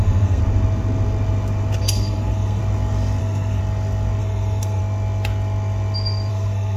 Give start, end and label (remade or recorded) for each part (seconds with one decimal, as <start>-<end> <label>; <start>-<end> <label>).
0.0-0.4 remade; 0.4-1.8 recorded; 1.8-2.6 remade; 2.6-3.2 recorded; 3.2-3.6 remade; 3.6-4.2 recorded; 4.2-4.8 remade; 4.8-6.3 recorded; 6.3-6.8 remade

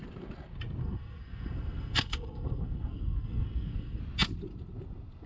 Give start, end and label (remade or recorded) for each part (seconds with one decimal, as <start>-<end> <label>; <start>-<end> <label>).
0.0-0.8 recorded; 0.8-4.0 remade; 4.0-5.3 recorded

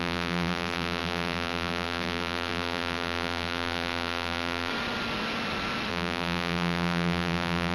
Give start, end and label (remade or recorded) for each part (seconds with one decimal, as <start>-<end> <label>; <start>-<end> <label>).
0.0-4.7 remade; 4.7-5.9 recorded; 5.9-7.7 remade

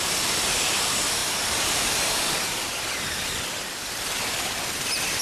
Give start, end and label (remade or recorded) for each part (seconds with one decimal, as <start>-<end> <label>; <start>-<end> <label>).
0.0-5.2 remade

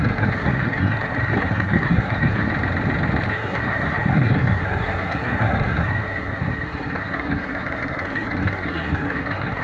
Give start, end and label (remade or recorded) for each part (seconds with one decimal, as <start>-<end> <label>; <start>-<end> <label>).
0.0-2.5 remade; 2.5-3.3 recorded; 3.3-9.6 remade

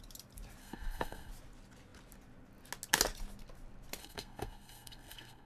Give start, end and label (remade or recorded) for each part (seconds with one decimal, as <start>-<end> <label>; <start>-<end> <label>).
0.0-0.6 recorded; 0.6-1.3 remade; 1.3-4.0 recorded; 4.0-5.5 remade

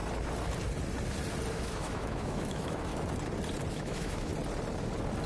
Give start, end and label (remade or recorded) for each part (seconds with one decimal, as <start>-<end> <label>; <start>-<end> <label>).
0.0-1.5 recorded; 1.5-2.9 remade; 2.9-3.7 recorded; 3.7-4.3 remade; 4.3-5.3 recorded